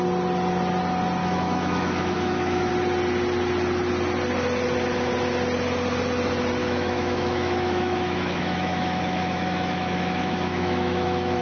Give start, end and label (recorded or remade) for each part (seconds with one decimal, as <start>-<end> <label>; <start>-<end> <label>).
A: 0.0-1.2 recorded; 1.2-2.7 remade; 2.7-6.6 recorded; 6.6-11.4 remade